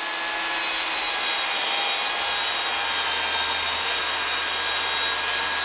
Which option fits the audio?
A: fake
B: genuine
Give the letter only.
B